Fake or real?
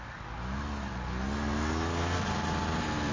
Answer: real